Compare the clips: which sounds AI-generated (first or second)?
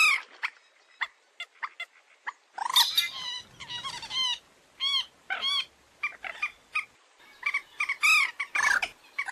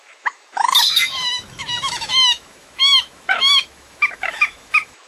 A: second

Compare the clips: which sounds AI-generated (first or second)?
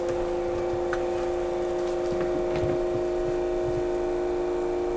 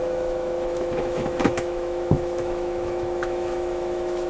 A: second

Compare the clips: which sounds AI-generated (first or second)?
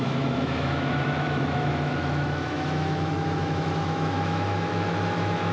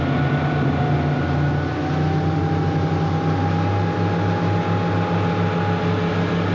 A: first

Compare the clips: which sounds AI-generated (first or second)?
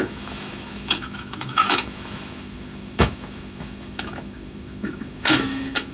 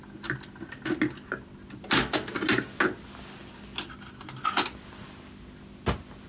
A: first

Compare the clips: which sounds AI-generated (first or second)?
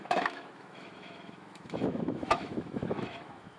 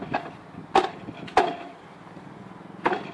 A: first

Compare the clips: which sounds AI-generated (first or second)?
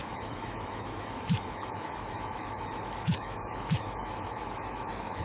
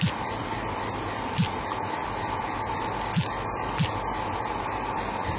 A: first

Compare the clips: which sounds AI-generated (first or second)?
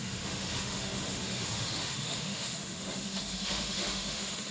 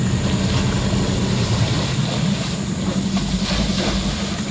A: first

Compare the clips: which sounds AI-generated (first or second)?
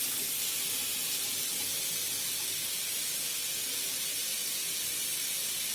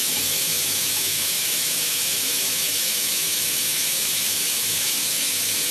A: second